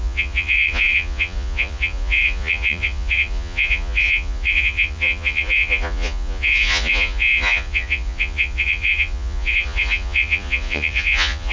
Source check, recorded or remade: remade